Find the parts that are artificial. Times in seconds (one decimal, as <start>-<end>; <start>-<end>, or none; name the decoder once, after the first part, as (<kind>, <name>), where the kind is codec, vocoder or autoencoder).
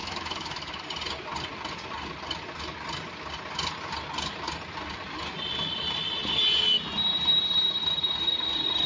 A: 0.0-0.8 (autoencoder, DAC-VAE)